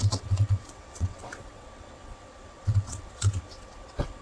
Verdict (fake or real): fake